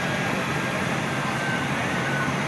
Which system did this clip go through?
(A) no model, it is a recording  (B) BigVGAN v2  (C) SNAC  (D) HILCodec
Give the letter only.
B